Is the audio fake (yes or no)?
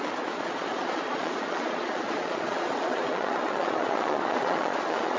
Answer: yes